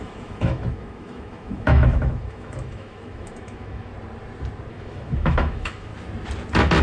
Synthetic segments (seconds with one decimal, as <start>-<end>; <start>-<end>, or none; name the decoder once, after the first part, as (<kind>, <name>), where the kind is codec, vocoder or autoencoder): 0.0-3.9 (autoencoder, DAC-VAE); 4.7-5.9